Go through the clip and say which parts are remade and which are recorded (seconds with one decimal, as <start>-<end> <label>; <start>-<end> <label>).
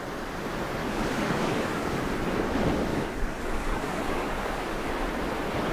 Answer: 0.0-0.8 recorded; 0.8-2.0 remade; 2.0-2.9 recorded; 2.9-4.9 remade; 4.9-5.7 recorded